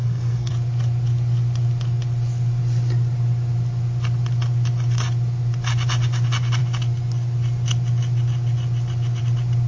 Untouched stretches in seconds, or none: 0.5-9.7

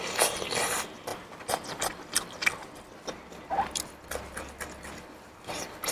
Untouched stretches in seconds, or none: 0.0-5.9